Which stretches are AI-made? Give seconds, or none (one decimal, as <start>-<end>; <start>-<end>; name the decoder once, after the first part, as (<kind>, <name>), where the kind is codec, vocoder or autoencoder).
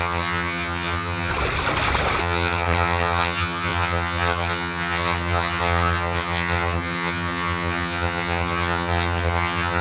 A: 0.0-1.3 (vocoder, HiFi-GAN); 2.2-9.8